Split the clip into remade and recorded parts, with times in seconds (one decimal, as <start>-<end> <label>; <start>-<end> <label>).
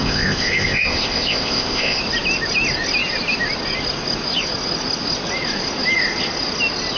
0.0-2.0 remade; 2.0-7.0 recorded